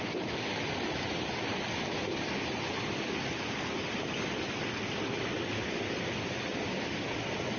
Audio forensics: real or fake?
real